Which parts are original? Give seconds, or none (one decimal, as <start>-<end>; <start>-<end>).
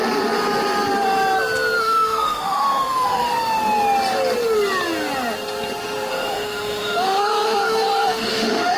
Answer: 0.0-1.8; 3.3-6.1